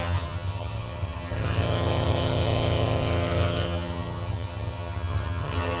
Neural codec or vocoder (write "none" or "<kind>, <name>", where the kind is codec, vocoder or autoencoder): vocoder, HiFi-GAN